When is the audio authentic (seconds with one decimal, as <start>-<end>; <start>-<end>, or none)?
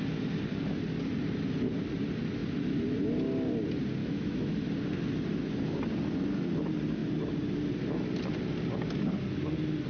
0.0-4.0; 4.5-9.9